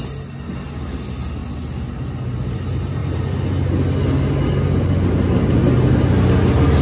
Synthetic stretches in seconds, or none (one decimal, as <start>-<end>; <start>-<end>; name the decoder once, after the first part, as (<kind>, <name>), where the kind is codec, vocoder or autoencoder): none